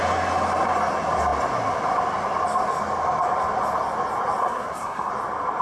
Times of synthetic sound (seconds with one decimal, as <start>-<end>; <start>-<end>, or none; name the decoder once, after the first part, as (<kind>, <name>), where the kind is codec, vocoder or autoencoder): 4.4-5.1 (codec, SNAC)

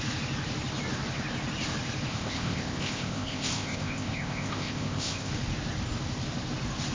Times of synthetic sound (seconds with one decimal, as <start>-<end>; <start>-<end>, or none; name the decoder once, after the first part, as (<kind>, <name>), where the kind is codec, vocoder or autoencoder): 2.1-5.3 (codec, ZipCodec)